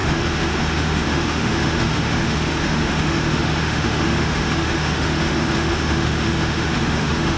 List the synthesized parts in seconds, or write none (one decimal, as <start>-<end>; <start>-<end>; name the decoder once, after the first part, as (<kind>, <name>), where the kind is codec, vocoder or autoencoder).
0.0-7.4 (autoencoder, DAC-VAE)